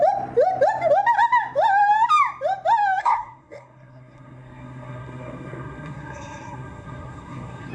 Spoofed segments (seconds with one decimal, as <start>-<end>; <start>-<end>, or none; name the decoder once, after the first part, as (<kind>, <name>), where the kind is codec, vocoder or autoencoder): 3.0-7.7 (codec, SNAC)